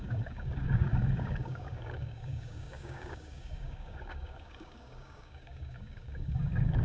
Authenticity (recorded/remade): remade